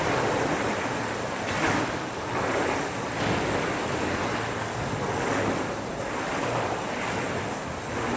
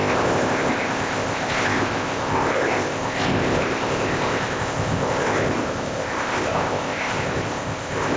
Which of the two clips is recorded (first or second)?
first